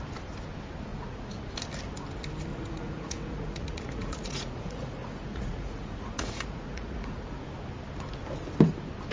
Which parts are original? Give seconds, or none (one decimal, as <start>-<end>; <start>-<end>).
0.0-0.9; 1.5-2.5; 7.2-9.1